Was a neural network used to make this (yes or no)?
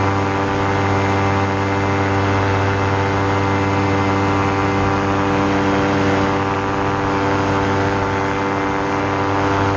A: no